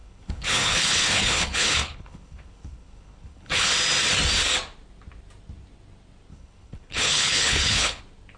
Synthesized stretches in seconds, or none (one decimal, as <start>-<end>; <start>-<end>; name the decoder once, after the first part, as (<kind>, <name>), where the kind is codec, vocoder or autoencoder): 0.0-3.7 (codec, HILCodec); 6.3-8.0